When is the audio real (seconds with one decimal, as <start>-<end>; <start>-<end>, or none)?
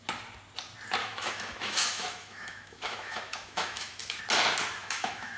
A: 0.0-1.0; 4.2-4.8